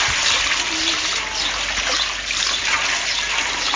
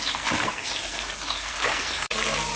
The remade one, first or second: second